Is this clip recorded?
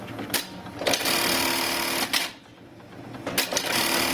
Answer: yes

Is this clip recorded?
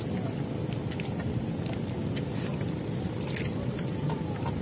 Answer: yes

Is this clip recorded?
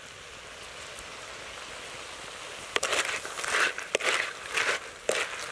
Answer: yes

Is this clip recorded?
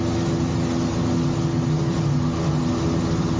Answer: yes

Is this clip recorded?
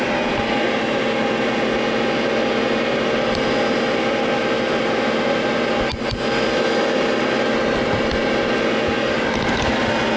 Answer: yes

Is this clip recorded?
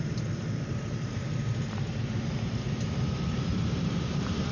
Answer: no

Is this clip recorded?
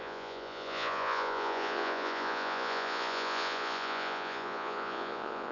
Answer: no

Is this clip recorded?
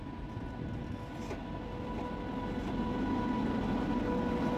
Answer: yes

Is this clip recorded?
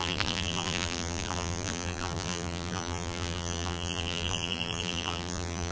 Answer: no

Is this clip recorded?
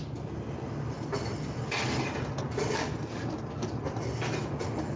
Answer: yes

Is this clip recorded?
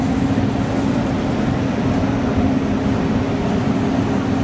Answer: yes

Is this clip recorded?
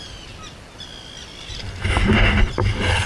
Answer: yes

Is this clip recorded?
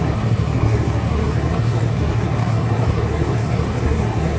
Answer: no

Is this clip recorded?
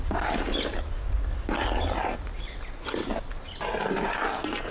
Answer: yes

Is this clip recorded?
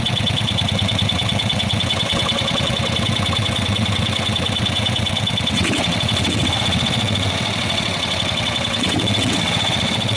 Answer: no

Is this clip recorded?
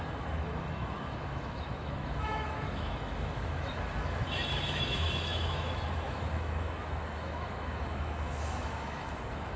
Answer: no